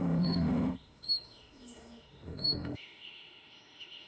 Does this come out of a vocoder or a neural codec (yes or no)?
yes